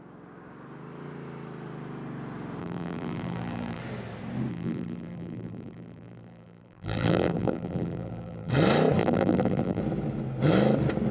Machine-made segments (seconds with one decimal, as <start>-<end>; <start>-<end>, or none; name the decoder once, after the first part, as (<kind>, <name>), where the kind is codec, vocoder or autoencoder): 2.6-3.8 (vocoder, BigVGAN v2); 4.5-8.5; 9.0-9.8